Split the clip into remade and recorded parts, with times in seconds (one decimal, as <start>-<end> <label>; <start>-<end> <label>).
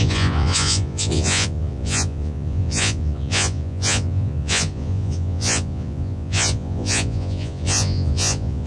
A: 0.0-8.7 remade